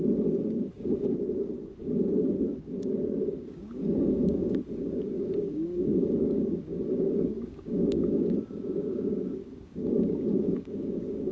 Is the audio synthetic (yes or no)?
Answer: yes